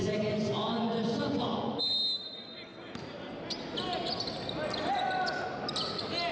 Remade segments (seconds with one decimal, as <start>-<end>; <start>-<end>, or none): 0.0-1.8